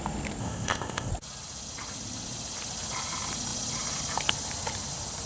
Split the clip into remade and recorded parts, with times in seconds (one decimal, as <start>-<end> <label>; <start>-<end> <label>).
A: 0.0-0.4 recorded; 0.4-1.1 remade; 1.1-5.3 recorded